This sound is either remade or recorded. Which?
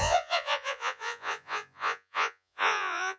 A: remade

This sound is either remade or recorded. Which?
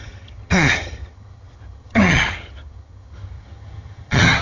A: remade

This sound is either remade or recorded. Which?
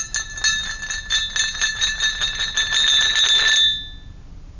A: recorded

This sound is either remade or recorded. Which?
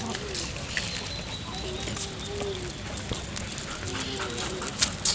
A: recorded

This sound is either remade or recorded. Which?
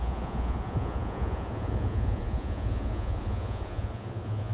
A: remade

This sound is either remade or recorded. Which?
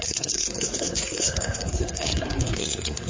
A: remade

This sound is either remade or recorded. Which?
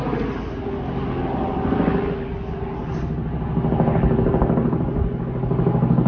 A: recorded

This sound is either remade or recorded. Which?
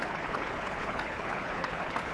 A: remade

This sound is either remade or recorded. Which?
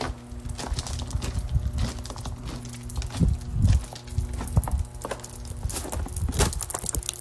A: recorded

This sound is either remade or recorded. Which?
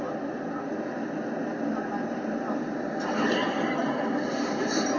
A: recorded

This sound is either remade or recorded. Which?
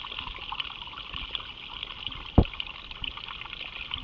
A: recorded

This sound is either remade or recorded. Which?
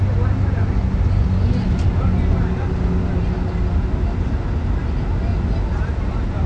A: recorded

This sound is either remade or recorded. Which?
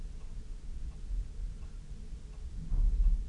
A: recorded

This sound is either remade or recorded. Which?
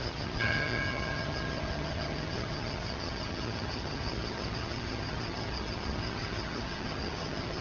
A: remade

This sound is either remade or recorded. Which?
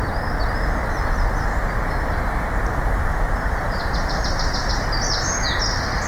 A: recorded